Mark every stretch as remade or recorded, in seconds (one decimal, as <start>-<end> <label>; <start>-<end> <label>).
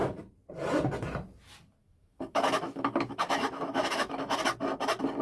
0.0-1.8 recorded; 1.8-4.4 remade; 4.4-5.2 recorded